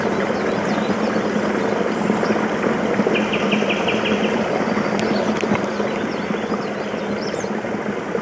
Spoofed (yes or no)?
no